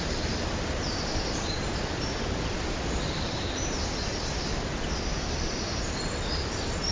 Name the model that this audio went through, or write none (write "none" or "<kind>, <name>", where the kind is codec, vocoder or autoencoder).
vocoder, BigVGAN v2